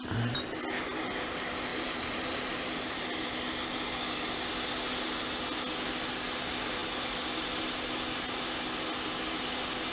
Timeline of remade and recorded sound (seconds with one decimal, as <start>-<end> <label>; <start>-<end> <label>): 0.0-1.7 recorded; 1.7-3.0 remade; 3.0-9.9 recorded